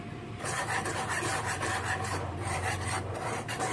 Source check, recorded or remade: remade